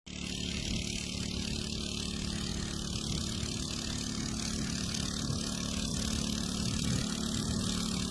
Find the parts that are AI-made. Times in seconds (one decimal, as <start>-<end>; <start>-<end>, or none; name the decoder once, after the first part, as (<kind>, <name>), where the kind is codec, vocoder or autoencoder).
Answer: 2.5-3.2 (vocoder, BigVGAN v2); 5.9-7.6